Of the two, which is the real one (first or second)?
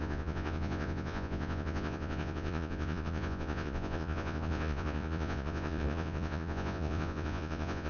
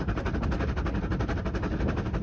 second